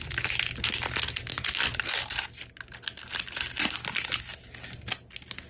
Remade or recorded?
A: recorded